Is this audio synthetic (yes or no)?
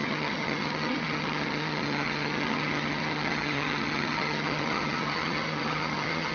yes